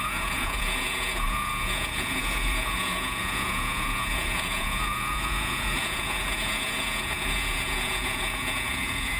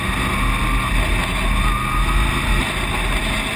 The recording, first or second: second